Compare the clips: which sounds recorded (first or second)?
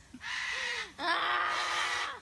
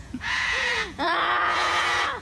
first